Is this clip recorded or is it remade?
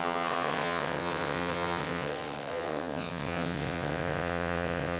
remade